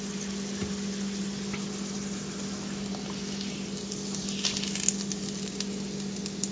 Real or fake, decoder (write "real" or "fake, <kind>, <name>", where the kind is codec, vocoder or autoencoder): real